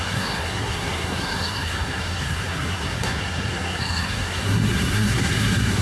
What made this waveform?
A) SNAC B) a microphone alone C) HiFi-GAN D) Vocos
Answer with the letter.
A